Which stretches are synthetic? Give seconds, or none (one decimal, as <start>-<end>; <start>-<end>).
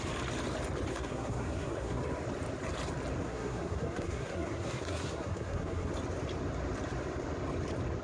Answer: 0.9-2.0; 3.2-5.9